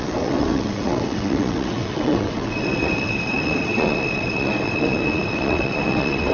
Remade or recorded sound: remade